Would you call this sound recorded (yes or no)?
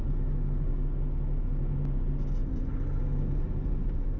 yes